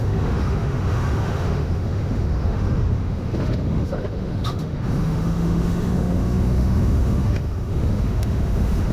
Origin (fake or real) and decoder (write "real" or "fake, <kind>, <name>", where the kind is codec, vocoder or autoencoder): fake, autoencoder, DAC-VAE